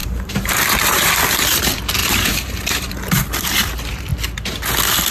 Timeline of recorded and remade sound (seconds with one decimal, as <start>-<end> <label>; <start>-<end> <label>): 0.0-1.1 remade; 1.1-2.0 recorded; 2.0-2.9 remade; 2.9-5.1 recorded